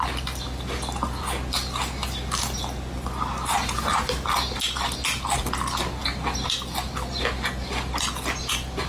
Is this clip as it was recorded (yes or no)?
yes